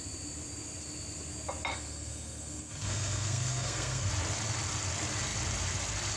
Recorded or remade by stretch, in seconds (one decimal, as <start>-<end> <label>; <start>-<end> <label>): 0.0-1.7 recorded; 1.7-4.1 remade; 4.1-6.2 recorded